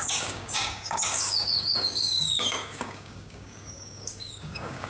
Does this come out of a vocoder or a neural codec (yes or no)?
yes